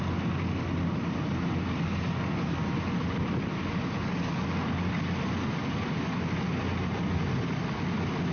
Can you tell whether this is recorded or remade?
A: recorded